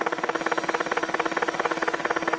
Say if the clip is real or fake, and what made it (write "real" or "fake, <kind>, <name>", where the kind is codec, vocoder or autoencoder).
real